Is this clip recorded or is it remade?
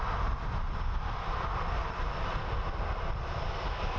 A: recorded